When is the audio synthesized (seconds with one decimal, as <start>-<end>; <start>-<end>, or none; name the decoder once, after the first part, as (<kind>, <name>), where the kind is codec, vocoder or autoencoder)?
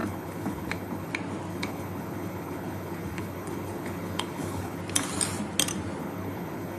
0.0-1.1 (codec, HILCodec); 1.5-4.8; 6.0-6.8